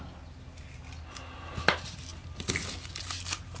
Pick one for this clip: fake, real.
real